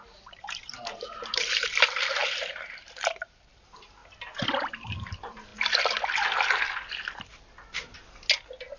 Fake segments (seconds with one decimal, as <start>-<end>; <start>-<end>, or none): 0.0-4.0; 4.7-5.5